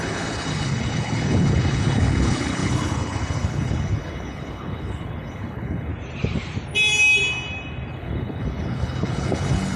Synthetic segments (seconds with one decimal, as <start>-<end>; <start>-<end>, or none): 0.0-5.9; 7.9-9.8